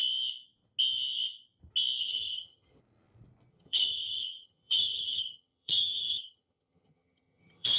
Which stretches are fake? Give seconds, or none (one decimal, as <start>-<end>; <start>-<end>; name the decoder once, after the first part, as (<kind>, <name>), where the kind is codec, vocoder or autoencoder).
2.0-2.8 (vocoder, HiFi-GAN); 3.5-7.8